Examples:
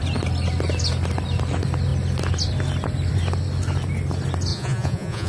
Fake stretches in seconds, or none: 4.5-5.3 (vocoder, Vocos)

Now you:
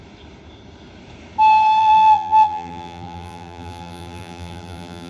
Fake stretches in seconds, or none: 1.8-5.1 (vocoder, BigVGAN v2)

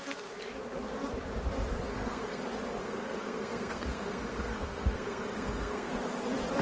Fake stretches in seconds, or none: 1.9-2.4 (codec, SNAC); 2.8-5.9